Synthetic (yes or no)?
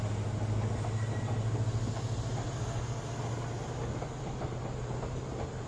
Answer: no